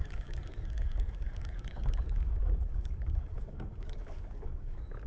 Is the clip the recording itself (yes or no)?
no